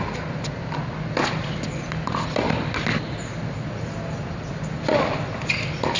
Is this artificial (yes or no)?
no